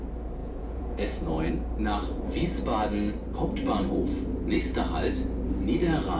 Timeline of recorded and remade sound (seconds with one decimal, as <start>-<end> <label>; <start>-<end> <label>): 0.0-0.4 recorded; 0.4-1.5 remade; 1.5-6.2 recorded